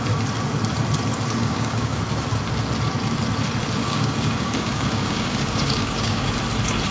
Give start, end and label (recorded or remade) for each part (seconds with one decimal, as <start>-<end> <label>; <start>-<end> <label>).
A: 0.0-1.4 recorded; 1.4-2.0 remade; 2.0-3.8 recorded; 3.8-6.3 remade; 6.3-6.9 recorded

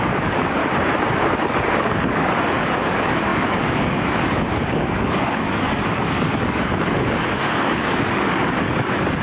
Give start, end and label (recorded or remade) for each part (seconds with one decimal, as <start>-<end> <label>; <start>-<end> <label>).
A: 0.0-0.6 remade; 0.6-1.4 recorded; 1.4-9.2 remade

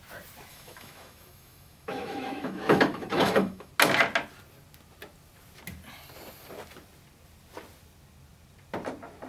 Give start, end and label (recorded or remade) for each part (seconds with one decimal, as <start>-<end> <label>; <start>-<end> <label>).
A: 0.0-0.5 recorded; 0.5-3.7 remade; 3.7-9.3 recorded

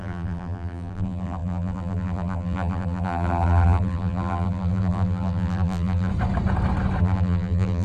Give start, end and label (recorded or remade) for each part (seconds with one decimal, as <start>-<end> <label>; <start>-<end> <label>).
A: 0.0-6.1 remade; 6.1-7.0 recorded; 7.0-7.8 remade

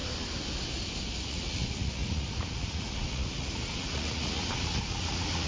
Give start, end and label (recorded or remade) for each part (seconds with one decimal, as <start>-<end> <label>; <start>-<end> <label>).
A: 0.0-1.2 recorded; 1.2-5.5 remade

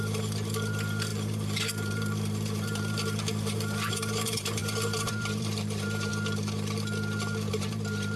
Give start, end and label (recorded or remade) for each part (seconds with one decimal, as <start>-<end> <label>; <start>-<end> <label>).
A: 0.0-6.1 remade; 6.1-7.5 recorded; 7.5-8.2 remade

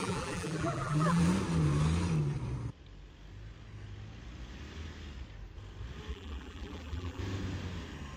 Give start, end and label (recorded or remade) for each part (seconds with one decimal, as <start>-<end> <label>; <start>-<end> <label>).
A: 0.0-1.2 remade; 1.2-6.1 recorded; 6.1-7.2 remade; 7.2-8.2 recorded